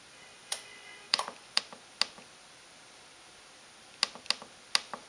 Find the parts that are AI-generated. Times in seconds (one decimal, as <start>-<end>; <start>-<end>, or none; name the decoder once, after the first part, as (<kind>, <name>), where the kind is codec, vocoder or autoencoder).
0.4-1.6 (vocoder, Vocos)